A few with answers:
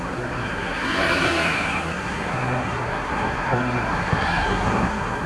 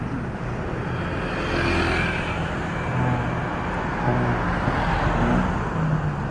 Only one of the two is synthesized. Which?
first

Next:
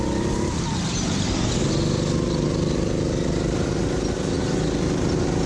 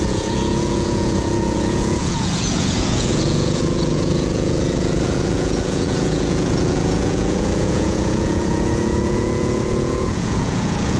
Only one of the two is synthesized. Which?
second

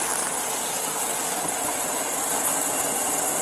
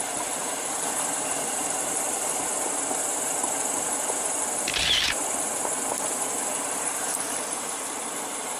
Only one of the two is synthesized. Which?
second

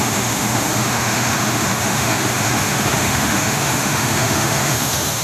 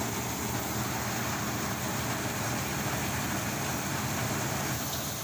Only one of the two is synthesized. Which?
first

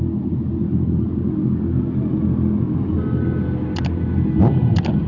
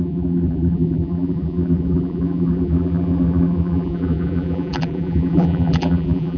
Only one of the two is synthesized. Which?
second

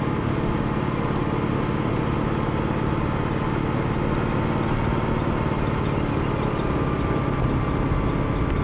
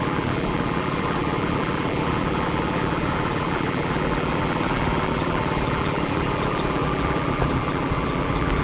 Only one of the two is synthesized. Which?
second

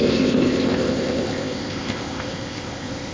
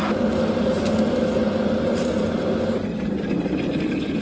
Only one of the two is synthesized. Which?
first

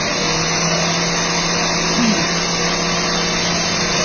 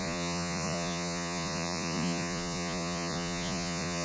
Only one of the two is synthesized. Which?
second